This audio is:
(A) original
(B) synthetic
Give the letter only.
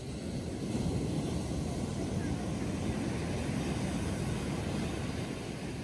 A